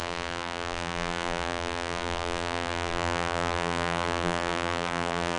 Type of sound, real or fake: fake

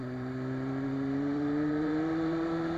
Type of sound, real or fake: fake